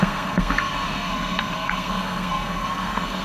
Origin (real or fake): fake